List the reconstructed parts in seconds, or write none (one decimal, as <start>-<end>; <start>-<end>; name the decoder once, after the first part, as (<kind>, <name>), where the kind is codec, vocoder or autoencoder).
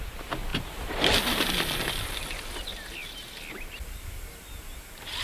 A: none